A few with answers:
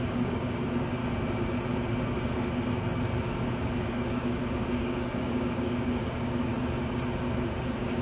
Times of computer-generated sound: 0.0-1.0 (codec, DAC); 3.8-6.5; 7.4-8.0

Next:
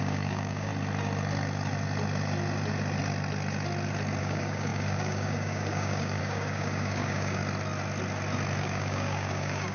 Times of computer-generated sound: 0.0-0.7 (codec, DAC); 4.2-7.4; 8.6-9.7

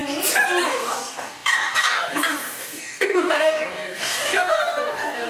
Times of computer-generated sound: 0.6-5.3 (codec, DAC)

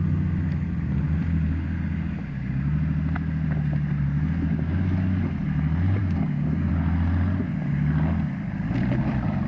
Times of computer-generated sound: 6.0-6.7 (codec, DAC)

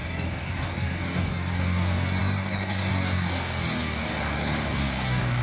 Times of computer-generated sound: 0.0-5.4 (codec, DAC)

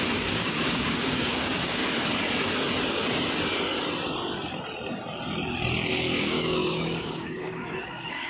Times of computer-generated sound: 0.0-1.8 (codec, DAC); 5.9-8.3